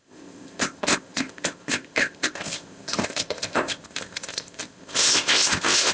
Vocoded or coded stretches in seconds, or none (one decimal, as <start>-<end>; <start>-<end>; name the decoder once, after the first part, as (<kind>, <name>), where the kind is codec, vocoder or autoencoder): 0.0-5.9 (codec, ZipCodec)